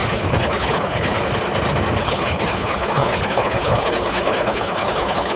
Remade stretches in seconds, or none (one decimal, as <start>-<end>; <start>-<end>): 0.0-1.2; 2.0-5.4